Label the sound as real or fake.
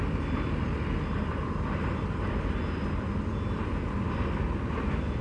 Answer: real